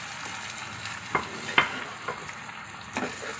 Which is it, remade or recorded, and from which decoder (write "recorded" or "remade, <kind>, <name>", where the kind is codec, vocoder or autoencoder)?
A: recorded